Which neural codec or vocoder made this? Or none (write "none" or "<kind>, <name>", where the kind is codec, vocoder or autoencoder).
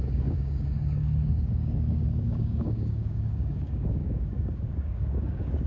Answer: codec, DAC